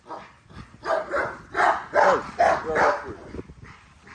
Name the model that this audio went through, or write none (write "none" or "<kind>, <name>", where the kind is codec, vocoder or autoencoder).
none